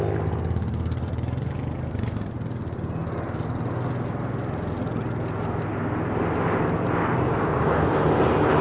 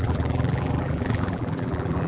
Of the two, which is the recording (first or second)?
first